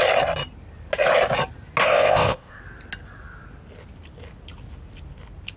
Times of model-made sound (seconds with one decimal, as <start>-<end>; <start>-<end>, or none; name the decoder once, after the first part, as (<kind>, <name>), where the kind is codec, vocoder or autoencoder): 1.8-2.6 (codec, ZipCodec)